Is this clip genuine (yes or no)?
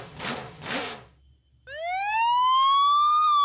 yes